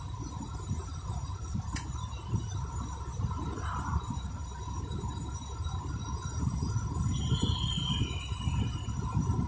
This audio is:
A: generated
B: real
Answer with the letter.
B